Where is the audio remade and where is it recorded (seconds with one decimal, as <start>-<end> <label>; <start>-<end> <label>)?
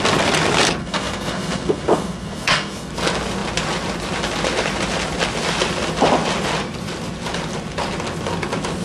0.0-0.8 recorded; 0.8-2.9 remade; 2.9-8.8 recorded